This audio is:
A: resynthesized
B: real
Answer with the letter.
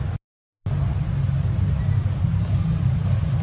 B